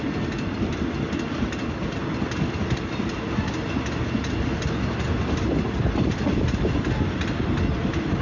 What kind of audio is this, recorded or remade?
recorded